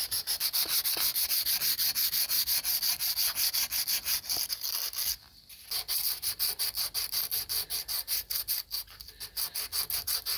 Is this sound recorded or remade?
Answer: recorded